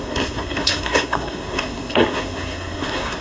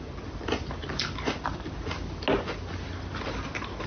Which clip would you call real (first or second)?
second